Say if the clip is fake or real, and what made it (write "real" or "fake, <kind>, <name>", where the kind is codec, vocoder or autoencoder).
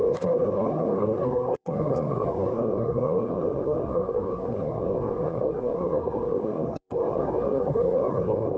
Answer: fake, codec, SNAC